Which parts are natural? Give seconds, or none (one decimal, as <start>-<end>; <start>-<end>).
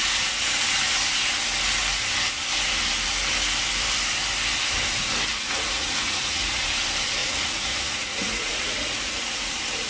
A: 0.0-5.3; 6.6-7.2; 9.5-9.9